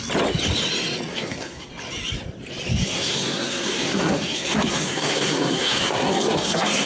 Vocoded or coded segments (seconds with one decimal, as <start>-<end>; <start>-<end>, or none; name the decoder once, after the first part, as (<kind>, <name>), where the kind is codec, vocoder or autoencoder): 1.1-1.7 (codec, SNAC); 2.8-6.9